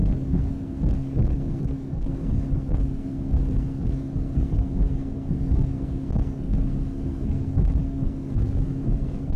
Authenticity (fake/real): fake